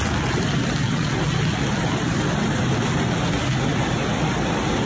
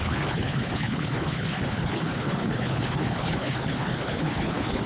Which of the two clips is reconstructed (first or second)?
second